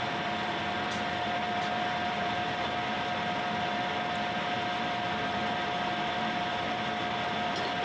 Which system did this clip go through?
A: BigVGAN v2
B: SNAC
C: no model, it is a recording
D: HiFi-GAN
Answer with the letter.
A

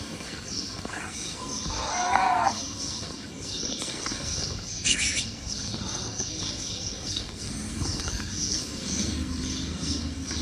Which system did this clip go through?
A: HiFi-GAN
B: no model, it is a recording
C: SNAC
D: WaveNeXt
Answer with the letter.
C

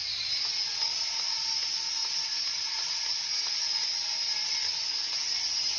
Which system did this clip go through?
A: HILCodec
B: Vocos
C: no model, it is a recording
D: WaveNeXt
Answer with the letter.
C